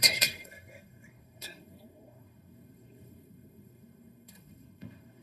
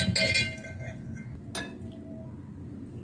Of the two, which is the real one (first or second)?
second